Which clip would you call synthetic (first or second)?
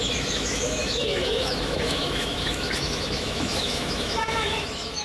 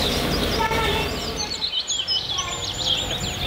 first